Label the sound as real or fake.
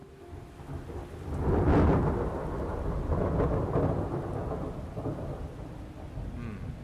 real